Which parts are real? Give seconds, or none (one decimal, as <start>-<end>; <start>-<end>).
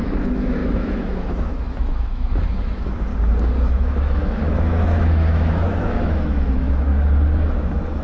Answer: 3.1-3.7; 6.9-8.0